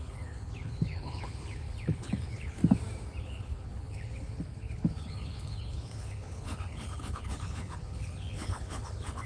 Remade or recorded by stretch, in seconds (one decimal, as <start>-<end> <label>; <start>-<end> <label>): 0.0-2.6 remade; 2.6-3.2 recorded; 3.2-9.3 remade